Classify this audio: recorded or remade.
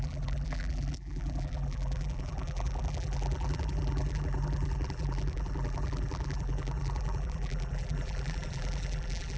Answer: remade